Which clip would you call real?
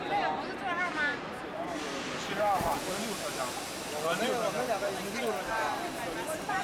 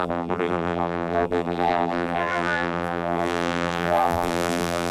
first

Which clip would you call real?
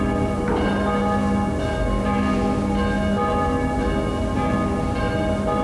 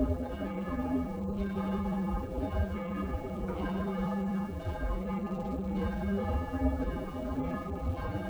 first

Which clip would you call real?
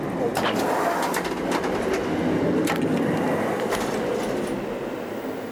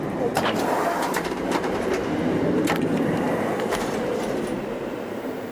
first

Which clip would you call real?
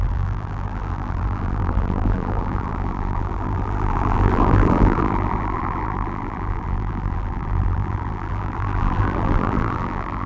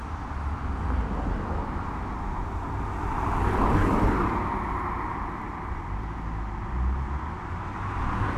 second